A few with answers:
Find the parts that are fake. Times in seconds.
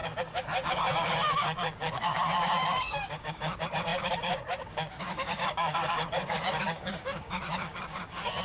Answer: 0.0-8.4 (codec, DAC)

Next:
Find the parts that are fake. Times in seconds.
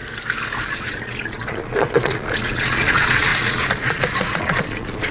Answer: 0.7-5.1 (vocoder, Vocos)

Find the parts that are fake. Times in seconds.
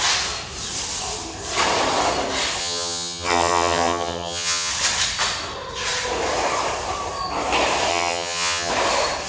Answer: 2.6-4.7 (vocoder, HiFi-GAN); 7.9-8.7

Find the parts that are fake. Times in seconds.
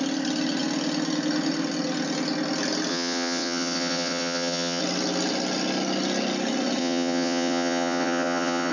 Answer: 2.9-4.8 (vocoder, WaveNeXt); 6.8-8.7